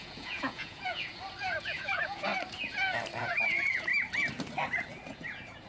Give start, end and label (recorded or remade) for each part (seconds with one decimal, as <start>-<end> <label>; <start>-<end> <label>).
0.0-1.1 remade; 1.1-1.6 recorded; 1.6-2.3 remade; 2.3-3.2 recorded; 3.2-3.9 remade; 3.9-5.1 recorded; 5.1-5.7 remade